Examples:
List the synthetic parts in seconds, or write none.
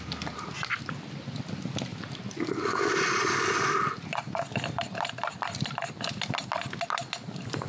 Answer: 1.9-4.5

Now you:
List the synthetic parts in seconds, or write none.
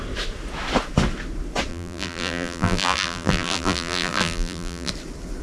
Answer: 1.7-4.9